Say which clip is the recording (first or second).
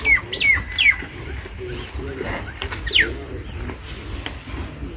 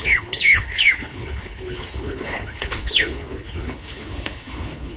first